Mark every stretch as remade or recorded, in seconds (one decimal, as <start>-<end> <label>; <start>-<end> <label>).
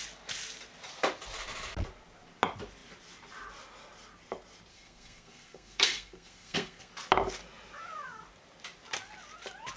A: 0.0-4.7 recorded; 4.7-6.9 remade; 6.9-9.8 recorded